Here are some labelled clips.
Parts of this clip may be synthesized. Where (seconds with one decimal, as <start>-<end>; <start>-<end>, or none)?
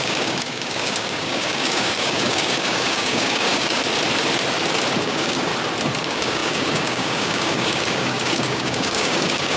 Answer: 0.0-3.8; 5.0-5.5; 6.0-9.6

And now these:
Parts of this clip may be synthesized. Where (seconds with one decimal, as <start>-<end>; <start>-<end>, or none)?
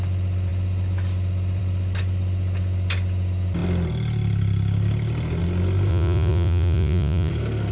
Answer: 5.9-7.3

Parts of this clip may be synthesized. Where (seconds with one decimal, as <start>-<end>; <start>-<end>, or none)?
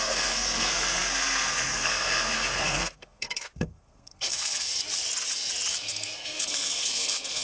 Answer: 0.0-4.7; 5.7-7.4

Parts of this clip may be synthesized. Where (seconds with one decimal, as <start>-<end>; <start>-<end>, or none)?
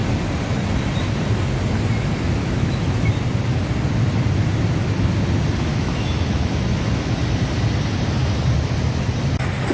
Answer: 2.4-3.1; 5.7-7.1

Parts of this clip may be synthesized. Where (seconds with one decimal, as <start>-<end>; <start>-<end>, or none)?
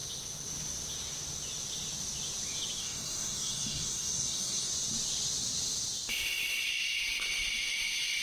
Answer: 2.8-4.7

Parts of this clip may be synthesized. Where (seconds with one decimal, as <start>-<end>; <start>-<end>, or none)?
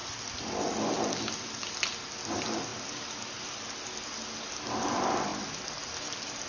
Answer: 0.0-1.2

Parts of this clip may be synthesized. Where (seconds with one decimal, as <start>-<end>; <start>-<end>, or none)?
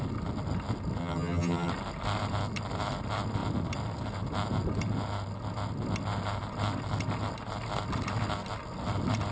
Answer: 1.0-1.7